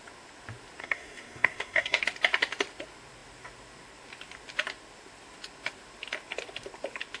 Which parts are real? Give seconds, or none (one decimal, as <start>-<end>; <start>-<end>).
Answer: 0.0-0.8; 2.0-7.2